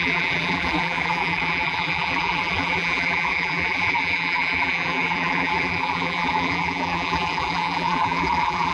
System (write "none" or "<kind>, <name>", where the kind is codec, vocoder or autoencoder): vocoder, BigVGAN v2